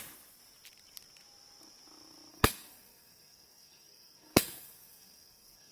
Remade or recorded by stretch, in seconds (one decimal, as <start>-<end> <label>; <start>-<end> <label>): 0.0-2.3 recorded; 2.3-5.7 remade